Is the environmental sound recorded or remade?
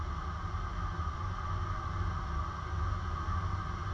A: recorded